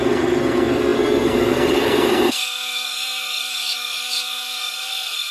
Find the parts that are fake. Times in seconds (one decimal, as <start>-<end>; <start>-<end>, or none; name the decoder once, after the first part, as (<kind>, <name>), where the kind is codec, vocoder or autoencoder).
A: 0.0-5.3 (codec, SNAC)